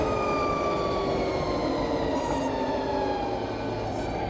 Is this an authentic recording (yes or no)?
yes